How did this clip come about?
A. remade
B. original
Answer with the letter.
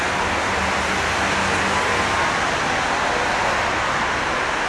B